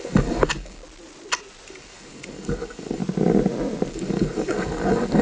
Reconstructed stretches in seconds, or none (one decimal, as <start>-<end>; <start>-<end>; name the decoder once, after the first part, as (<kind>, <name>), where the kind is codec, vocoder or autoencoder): 0.0-0.8 (codec, DAC); 1.7-3.0; 3.9-5.2